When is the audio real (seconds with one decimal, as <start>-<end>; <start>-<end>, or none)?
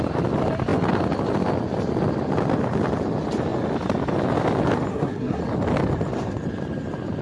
0.0-4.9; 5.4-7.2